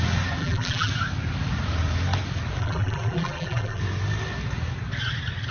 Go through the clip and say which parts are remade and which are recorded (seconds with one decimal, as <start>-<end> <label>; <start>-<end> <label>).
0.0-0.4 recorded; 0.4-0.9 remade; 0.9-2.6 recorded; 2.6-3.8 remade; 3.8-5.5 recorded